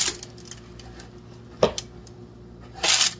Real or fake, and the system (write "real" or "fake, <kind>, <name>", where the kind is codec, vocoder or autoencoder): real